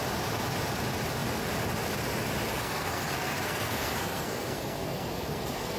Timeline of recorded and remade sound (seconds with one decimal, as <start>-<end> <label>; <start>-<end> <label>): 0.0-2.5 recorded; 2.5-5.8 remade